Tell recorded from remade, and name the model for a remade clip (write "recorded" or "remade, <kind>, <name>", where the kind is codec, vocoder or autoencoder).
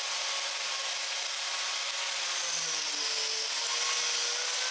recorded